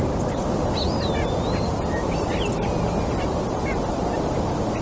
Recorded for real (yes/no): yes